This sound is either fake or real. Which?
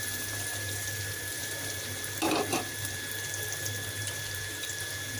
fake